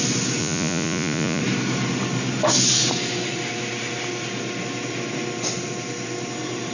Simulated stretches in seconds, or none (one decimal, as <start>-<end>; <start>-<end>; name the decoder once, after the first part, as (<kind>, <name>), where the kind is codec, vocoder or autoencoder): 0.4-1.4 (vocoder, Vocos)